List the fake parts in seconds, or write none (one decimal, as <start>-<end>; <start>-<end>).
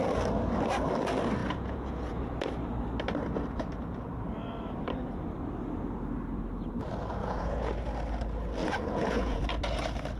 1.4-2.2; 7.2-7.7; 8.6-9.4